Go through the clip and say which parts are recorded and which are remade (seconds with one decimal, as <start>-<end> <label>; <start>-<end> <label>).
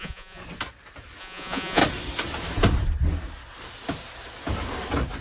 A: 0.0-0.4 remade; 0.4-1.2 recorded; 1.2-1.8 remade; 1.8-5.2 recorded